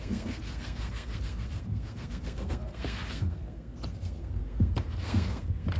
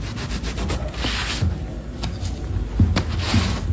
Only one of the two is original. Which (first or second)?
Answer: second